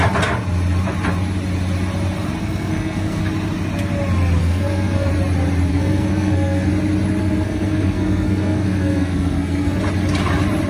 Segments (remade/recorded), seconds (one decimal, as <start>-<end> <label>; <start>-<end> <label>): 0.0-2.4 recorded; 2.4-3.2 remade; 3.2-4.4 recorded; 4.4-5.1 remade; 5.1-5.7 recorded; 5.7-6.7 remade; 6.7-7.2 recorded; 7.2-9.8 remade; 9.8-10.7 recorded